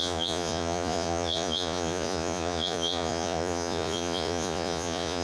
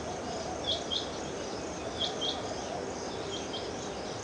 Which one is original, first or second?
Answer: second